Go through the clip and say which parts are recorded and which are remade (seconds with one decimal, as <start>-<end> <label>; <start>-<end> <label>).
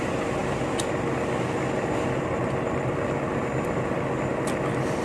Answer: 0.0-5.0 recorded